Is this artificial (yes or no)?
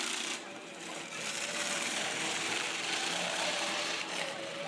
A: yes